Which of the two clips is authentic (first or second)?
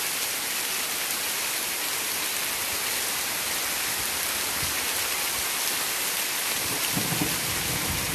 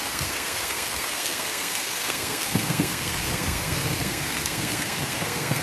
first